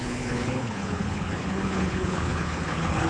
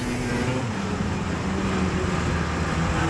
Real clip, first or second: second